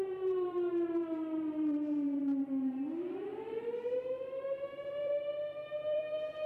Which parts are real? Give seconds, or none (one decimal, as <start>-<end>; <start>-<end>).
none